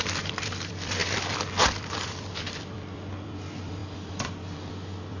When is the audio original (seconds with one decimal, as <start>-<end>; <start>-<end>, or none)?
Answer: none